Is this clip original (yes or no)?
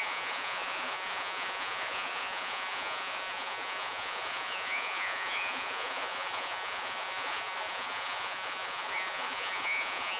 no